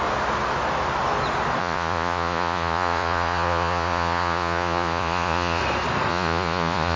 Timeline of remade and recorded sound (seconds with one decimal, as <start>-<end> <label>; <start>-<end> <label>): 0.0-1.6 recorded; 1.6-5.6 remade; 5.6-6.1 recorded; 6.1-7.0 remade